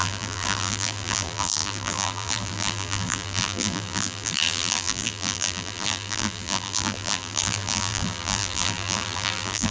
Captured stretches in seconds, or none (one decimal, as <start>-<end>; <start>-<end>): none